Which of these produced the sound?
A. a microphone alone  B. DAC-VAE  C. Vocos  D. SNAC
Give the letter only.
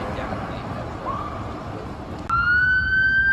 A